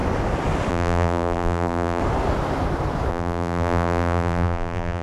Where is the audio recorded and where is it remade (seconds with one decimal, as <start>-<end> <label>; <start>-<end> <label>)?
0.0-0.7 recorded; 0.7-2.0 remade; 2.0-3.1 recorded; 3.1-5.0 remade

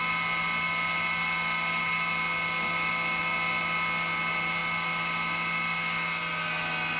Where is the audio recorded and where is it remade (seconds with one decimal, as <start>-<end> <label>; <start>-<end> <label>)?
0.0-7.0 recorded